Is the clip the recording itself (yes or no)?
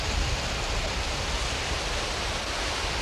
yes